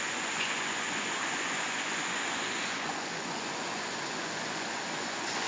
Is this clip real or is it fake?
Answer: fake